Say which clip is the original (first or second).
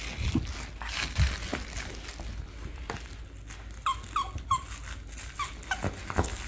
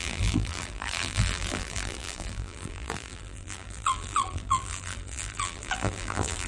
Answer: first